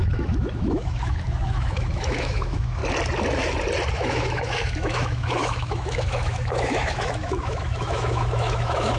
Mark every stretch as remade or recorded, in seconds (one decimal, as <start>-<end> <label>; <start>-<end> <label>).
0.0-2.8 remade; 2.8-3.9 recorded; 3.9-9.0 remade